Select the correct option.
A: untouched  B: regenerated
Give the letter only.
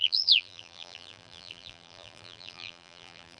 B